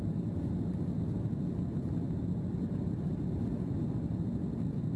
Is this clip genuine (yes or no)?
yes